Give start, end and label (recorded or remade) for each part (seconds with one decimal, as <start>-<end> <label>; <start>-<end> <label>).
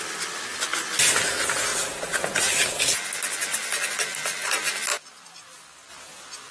0.0-1.7 recorded; 1.7-2.5 remade; 2.5-6.5 recorded